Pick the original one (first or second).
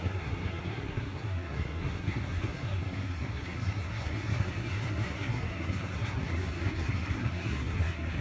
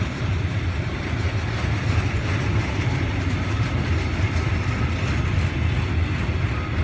second